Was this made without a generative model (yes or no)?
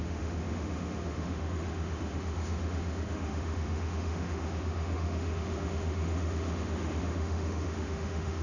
no